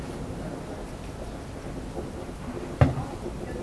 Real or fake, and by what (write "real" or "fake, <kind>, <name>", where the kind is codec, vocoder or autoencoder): real